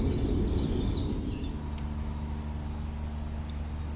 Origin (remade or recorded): recorded